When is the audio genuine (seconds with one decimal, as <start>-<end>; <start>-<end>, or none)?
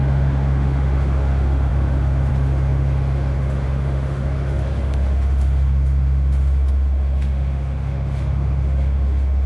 none